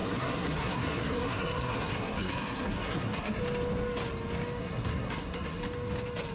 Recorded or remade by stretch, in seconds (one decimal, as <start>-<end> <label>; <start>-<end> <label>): 0.0-3.4 remade; 3.4-4.6 recorded; 4.6-5.6 remade; 5.6-6.3 recorded